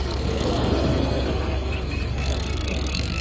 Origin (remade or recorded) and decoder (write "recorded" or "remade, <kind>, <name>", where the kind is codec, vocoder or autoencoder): remade, codec, SNAC